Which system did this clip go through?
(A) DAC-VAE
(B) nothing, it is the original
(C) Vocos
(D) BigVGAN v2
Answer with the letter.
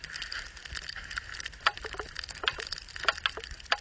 B